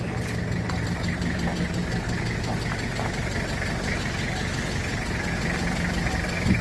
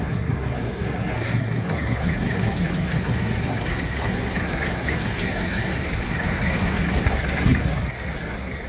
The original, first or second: first